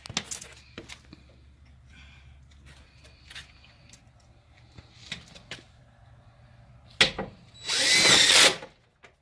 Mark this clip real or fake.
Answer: real